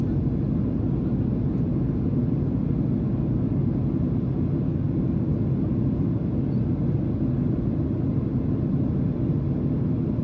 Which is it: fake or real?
real